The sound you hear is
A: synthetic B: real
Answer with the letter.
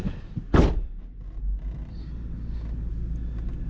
B